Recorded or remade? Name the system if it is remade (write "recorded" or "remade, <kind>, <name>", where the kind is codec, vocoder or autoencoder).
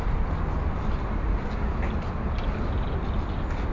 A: recorded